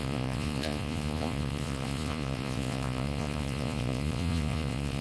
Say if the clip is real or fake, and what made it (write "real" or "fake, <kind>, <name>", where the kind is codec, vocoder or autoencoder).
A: fake, vocoder, Vocos